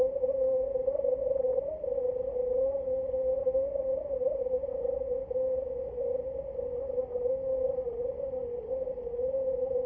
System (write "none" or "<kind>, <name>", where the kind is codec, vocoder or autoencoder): none